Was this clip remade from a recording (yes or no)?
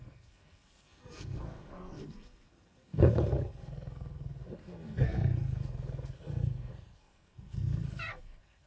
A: yes